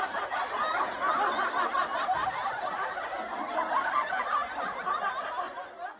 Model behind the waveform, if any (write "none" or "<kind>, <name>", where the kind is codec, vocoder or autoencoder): none